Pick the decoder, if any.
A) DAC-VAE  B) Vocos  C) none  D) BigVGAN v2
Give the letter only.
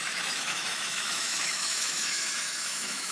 A